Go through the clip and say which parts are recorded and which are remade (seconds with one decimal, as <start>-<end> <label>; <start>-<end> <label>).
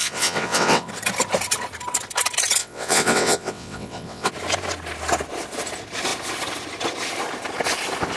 0.0-0.9 remade; 0.9-2.6 recorded; 2.6-4.3 remade; 4.3-8.2 recorded